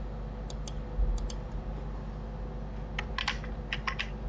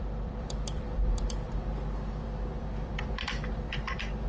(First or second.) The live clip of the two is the first